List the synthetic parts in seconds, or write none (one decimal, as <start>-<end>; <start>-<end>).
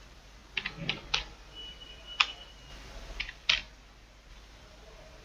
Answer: 0.0-0.4; 1.3-3.6; 4.3-5.2